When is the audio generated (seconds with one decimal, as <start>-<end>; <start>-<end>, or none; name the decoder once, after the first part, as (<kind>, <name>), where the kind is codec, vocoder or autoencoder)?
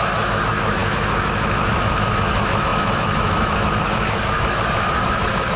0.0-5.6 (autoencoder, DAC-VAE)